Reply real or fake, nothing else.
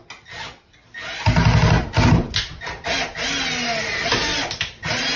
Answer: real